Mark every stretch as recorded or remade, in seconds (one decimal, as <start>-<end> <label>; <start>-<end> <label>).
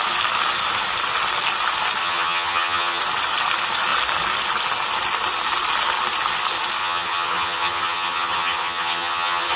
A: 0.0-2.0 recorded; 2.0-3.0 remade; 3.0-6.8 recorded; 6.8-9.6 remade